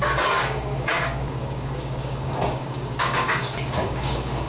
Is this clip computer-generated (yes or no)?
yes